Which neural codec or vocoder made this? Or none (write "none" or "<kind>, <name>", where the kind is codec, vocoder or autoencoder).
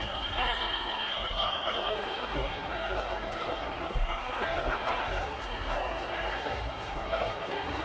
codec, SNAC